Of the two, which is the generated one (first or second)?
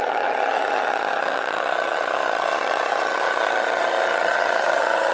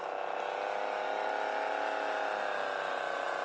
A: first